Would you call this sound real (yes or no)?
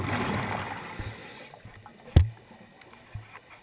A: yes